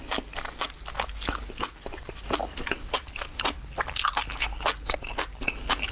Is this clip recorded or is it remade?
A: recorded